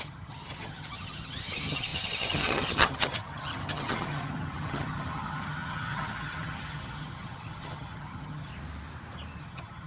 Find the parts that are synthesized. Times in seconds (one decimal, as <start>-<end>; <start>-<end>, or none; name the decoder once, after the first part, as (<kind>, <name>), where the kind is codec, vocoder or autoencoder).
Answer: 0.0-8.5 (vocoder, HiFi-GAN); 9.4-9.9